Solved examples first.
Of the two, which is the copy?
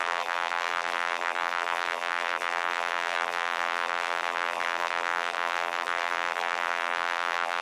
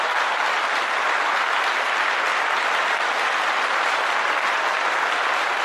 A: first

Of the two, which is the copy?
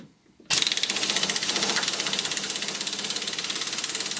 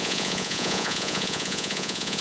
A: second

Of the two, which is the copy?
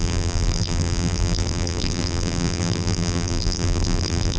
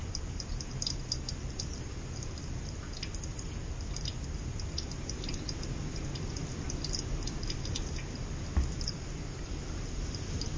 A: first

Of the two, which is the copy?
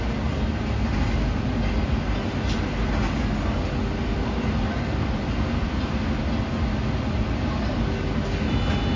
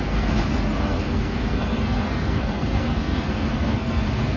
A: second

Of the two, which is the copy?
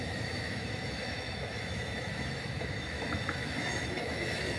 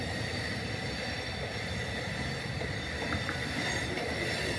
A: first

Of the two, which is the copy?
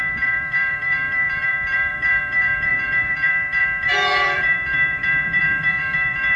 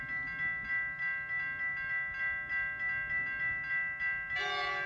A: first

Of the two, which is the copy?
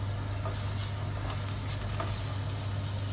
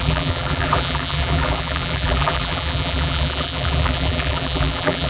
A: second